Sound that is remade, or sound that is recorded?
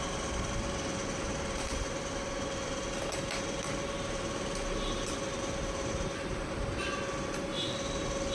recorded